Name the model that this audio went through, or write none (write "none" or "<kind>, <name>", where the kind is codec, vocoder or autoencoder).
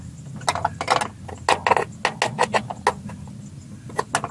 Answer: none